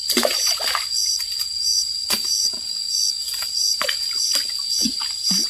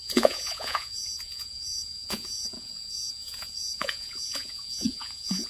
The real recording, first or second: first